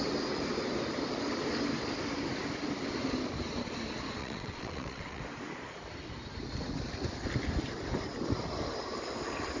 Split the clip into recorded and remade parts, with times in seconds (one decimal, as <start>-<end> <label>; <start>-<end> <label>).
0.0-4.2 recorded; 4.2-5.2 remade; 5.2-9.6 recorded